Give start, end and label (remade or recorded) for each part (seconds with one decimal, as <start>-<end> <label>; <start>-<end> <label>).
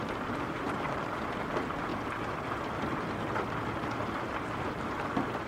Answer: 0.0-1.9 remade; 1.9-4.2 recorded; 4.2-5.5 remade